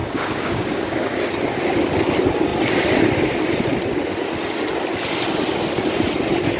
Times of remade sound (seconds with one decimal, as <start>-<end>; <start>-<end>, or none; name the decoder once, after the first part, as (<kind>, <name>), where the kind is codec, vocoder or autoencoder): 0.0-1.2 (codec, DAC)